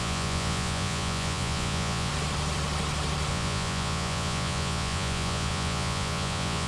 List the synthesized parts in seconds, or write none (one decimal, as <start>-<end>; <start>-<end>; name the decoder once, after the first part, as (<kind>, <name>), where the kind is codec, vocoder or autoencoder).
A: 0.0-2.1 (vocoder, Vocos); 3.3-6.7